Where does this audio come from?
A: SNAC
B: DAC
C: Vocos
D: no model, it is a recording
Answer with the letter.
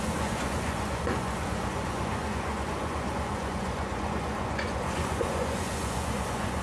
C